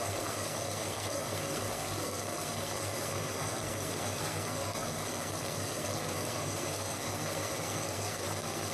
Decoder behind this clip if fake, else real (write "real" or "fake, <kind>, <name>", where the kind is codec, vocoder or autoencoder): fake, codec, SNAC